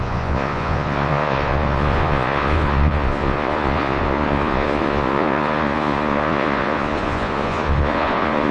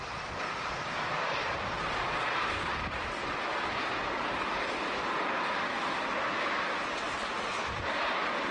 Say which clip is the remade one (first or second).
first